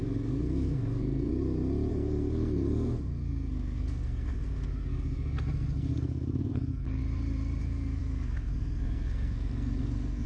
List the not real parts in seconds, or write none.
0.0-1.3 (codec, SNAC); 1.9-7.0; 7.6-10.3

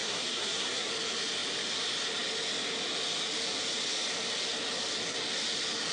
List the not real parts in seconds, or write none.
0.0-0.9 (codec, SNAC)